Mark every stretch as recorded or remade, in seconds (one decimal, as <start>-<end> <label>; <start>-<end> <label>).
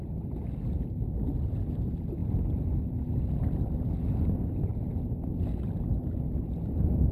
0.0-7.1 recorded